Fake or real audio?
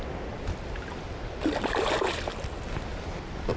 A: real